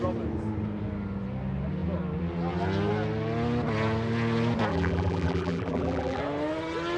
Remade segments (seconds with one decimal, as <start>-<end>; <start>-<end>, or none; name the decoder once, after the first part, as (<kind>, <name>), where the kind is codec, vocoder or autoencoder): 4.7-6.2 (vocoder, BigVGAN v2)